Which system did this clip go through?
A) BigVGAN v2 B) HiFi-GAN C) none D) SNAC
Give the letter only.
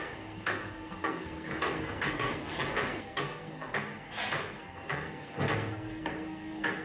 D